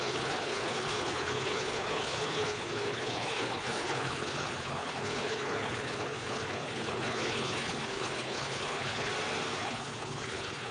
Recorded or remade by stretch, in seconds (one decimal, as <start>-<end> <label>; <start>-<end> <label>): 0.0-9.1 remade; 9.1-9.6 recorded; 9.6-10.7 remade